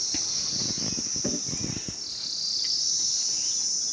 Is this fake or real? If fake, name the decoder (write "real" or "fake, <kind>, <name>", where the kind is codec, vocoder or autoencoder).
real